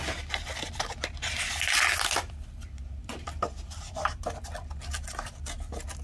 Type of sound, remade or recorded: recorded